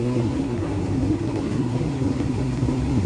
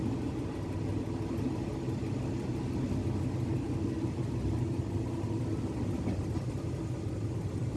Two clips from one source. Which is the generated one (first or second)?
first